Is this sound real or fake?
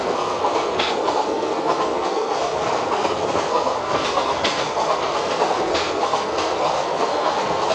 fake